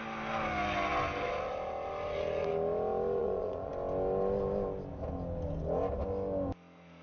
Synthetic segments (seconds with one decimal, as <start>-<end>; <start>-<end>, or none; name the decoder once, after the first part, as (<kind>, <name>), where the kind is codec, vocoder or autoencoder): 3.2-3.7 (vocoder, Vocos)